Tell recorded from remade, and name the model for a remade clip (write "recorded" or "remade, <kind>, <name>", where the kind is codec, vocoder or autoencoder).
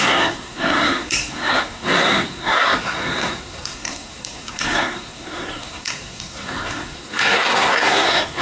remade, codec, SNAC